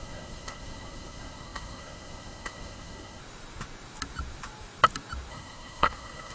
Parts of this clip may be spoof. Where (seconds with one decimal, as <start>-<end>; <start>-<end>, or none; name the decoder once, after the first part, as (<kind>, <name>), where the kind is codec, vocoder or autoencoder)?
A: 0.0-3.2 (codec, SNAC); 5.3-6.3